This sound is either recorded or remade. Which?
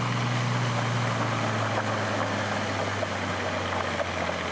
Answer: recorded